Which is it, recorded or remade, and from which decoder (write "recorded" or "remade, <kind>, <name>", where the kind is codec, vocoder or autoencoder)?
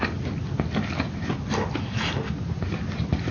recorded